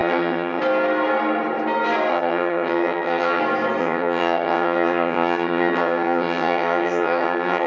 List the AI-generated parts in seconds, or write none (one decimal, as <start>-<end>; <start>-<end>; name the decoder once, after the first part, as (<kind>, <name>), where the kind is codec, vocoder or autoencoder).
0.0-0.6 (vocoder, HiFi-GAN); 2.1-3.4; 3.8-7.7

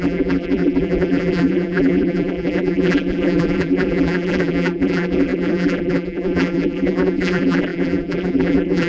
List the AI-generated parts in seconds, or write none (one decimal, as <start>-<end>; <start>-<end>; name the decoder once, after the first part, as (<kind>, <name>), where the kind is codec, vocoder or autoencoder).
0.0-8.9 (vocoder, BigVGAN v2)

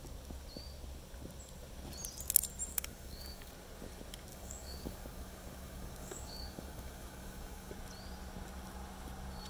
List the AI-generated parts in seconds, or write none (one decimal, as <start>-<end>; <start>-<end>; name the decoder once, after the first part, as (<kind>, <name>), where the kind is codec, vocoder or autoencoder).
2.7-3.5 (codec, DAC); 4.3-7.7

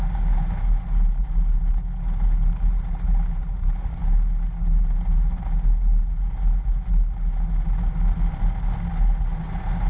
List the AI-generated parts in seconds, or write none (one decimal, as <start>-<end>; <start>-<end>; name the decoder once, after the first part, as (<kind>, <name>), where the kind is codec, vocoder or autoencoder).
none

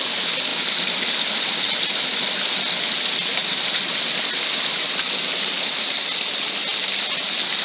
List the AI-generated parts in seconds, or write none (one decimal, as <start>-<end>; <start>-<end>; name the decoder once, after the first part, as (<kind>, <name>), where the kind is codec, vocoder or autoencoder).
none

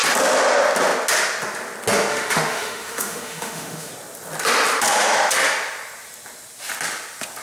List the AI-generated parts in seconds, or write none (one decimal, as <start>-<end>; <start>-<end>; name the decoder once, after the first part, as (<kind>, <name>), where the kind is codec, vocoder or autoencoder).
2.1-3.9 (autoencoder, DAC-VAE)

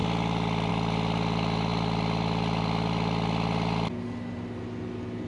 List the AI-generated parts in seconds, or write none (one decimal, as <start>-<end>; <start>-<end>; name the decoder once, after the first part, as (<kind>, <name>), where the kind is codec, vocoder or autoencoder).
none